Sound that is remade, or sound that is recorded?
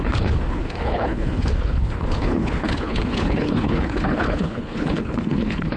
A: remade